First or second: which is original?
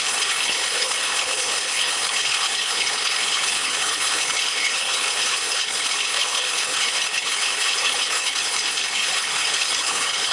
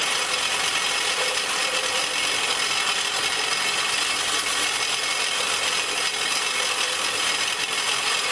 second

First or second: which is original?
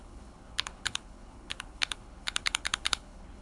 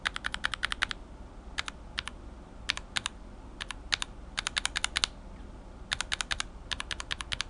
second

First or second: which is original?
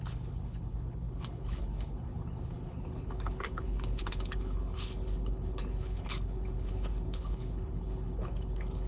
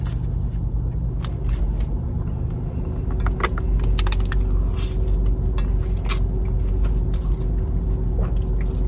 second